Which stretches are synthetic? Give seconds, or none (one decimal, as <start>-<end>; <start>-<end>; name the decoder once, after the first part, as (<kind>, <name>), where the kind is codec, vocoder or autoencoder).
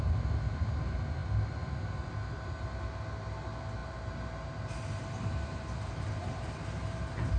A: 3.8-7.4 (vocoder, BigVGAN v2)